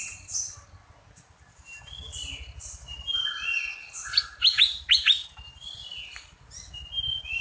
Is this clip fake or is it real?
real